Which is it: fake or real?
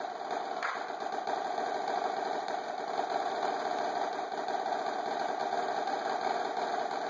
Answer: real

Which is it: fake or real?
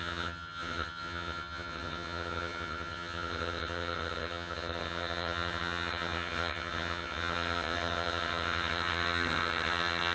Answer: fake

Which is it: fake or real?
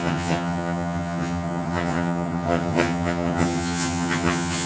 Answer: fake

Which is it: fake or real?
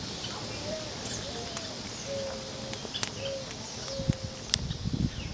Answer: real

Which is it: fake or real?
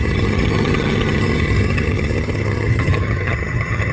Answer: fake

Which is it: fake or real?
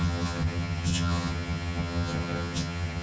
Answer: fake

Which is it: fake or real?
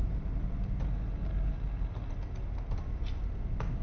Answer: real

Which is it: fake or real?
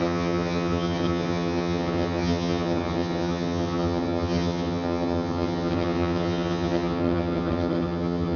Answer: fake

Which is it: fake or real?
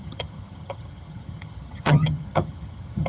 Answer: fake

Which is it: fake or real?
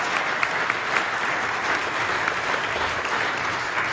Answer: real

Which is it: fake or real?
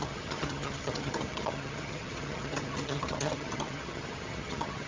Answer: fake